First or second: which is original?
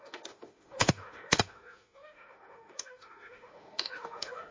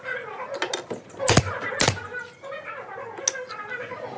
second